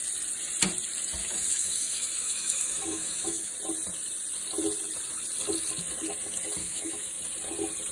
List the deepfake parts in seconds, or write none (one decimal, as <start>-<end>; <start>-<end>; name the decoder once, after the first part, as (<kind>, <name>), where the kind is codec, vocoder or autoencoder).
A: 1.2-3.5 (autoencoder, DAC-VAE); 6.6-7.2